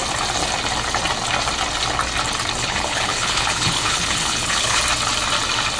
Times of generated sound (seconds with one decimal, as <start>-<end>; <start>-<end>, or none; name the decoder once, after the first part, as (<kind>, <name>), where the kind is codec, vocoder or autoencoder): 2.6-4.8 (codec, HILCodec)